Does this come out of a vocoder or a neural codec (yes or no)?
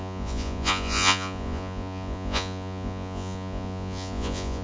yes